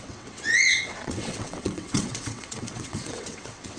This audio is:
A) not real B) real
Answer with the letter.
A